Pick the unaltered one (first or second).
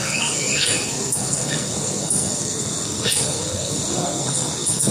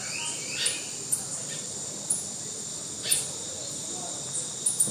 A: second